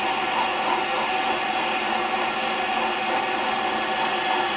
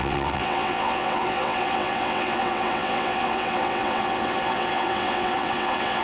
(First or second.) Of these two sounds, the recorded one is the first